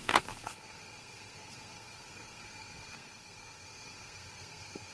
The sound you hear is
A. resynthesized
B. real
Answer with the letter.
A